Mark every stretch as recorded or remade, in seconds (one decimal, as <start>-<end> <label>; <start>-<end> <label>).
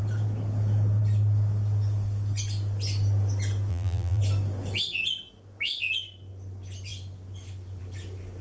0.0-3.7 recorded; 3.7-4.2 remade; 4.2-8.4 recorded